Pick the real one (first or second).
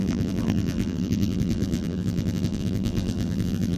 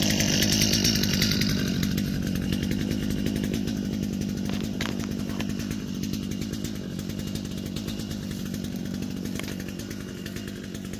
second